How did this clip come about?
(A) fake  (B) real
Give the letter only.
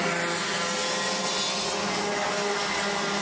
B